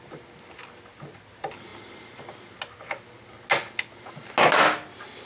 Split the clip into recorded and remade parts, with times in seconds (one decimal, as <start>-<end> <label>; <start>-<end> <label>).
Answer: 0.0-5.3 recorded